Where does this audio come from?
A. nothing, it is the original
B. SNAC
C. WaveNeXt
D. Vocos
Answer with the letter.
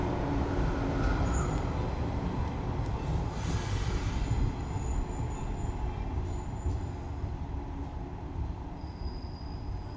A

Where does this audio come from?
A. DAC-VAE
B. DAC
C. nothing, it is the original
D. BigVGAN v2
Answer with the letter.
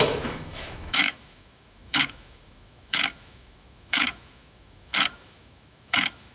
A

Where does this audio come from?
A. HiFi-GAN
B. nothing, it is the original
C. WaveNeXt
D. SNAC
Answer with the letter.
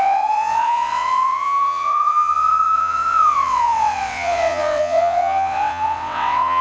C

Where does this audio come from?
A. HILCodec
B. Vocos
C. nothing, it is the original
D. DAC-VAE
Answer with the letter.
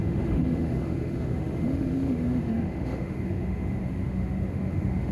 D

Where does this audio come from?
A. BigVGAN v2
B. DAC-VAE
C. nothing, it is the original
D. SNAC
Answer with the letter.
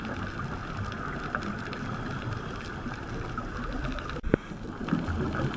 C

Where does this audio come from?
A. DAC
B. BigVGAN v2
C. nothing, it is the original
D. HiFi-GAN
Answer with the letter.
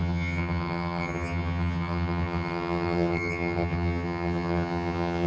D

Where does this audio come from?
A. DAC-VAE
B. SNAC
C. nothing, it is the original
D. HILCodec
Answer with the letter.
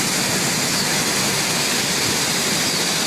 C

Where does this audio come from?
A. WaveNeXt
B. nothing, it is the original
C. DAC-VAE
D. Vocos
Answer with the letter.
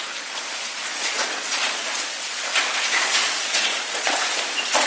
D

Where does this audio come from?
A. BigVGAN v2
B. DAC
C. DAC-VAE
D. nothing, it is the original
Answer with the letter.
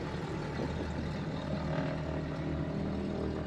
D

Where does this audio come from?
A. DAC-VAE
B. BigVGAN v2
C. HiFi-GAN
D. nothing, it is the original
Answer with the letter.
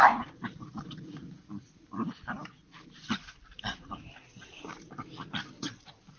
D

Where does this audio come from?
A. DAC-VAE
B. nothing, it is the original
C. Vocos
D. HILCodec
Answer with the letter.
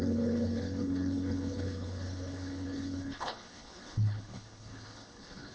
D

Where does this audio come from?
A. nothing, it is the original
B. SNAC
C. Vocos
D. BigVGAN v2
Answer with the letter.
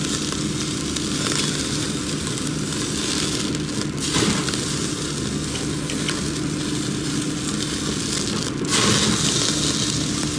A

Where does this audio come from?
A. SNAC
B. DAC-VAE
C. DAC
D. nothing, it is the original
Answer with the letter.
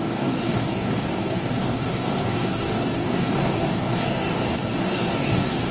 C